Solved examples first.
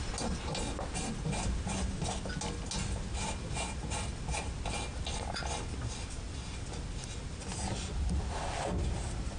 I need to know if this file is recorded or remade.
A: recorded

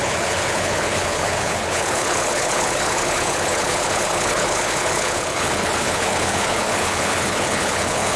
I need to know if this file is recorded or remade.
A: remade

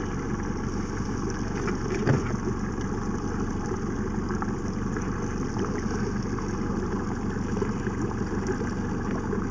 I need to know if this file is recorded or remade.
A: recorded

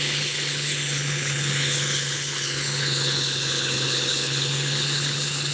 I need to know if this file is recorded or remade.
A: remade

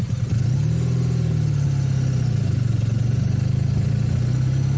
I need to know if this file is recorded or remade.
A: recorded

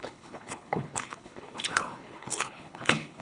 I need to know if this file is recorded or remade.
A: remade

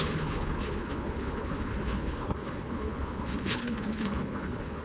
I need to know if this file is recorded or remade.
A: remade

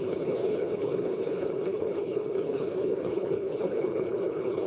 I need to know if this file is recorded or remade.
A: remade